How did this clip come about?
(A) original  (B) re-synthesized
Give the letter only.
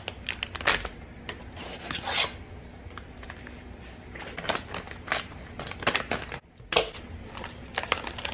A